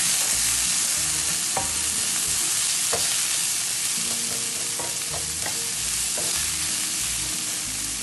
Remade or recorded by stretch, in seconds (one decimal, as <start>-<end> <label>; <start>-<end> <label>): 0.0-8.0 recorded